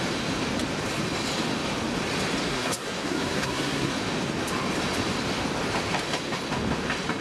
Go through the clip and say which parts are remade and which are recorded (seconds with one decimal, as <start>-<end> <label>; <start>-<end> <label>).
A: 0.0-2.5 recorded; 2.5-3.9 remade; 3.9-7.2 recorded